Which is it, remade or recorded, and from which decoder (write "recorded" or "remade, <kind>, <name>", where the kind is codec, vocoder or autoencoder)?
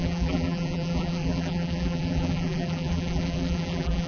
remade, vocoder, BigVGAN v2